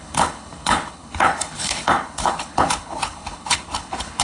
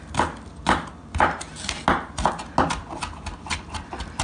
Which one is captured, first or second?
second